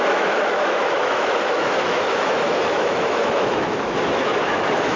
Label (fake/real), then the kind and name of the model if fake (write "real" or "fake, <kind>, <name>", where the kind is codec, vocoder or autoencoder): fake, autoencoder, DAC-VAE